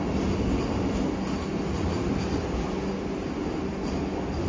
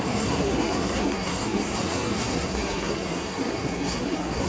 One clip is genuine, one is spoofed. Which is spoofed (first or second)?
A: second